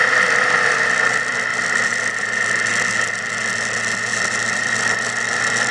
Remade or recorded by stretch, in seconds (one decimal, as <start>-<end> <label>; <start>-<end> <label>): 0.0-1.5 recorded; 1.5-2.7 remade; 2.7-4.1 recorded; 4.1-5.7 remade